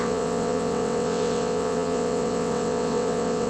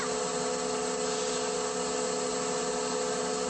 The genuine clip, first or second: second